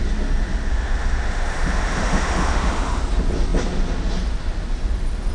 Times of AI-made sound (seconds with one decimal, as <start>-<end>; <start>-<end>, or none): 0.7-3.0